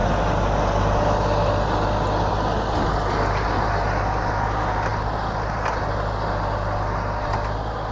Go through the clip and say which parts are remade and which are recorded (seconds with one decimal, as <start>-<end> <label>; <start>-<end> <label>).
0.0-7.9 recorded